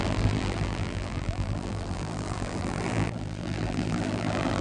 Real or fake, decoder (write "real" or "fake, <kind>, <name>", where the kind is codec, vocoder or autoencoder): fake, vocoder, BigVGAN v2